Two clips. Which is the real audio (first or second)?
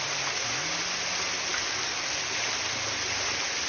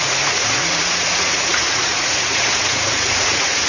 first